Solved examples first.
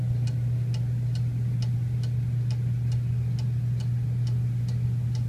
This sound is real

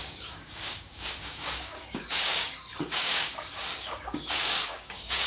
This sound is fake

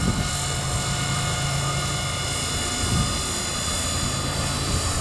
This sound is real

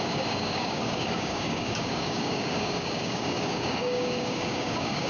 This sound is fake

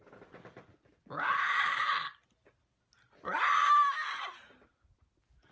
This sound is real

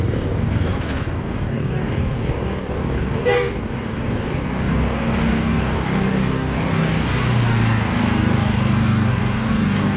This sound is fake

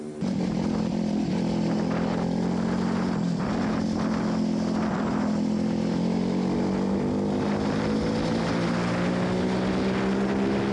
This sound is real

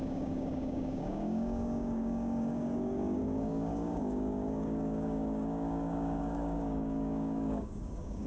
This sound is fake